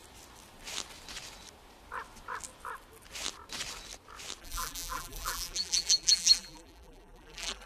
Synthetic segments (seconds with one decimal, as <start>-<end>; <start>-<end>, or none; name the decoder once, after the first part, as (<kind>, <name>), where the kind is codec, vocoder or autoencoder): 4.4-7.7 (vocoder, BigVGAN v2)